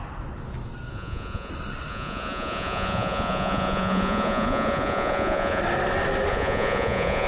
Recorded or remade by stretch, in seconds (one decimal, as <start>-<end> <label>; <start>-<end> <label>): 0.0-0.9 recorded; 0.9-1.5 remade; 1.5-1.9 recorded; 1.9-5.6 remade; 5.6-6.3 recorded; 6.3-7.3 remade